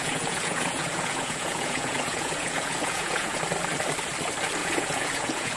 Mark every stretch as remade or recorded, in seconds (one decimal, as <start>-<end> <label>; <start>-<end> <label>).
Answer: 0.0-3.4 remade; 3.4-4.6 recorded; 4.6-5.6 remade